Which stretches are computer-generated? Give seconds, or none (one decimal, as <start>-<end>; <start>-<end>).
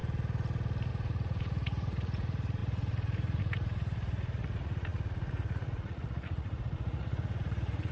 0.9-7.9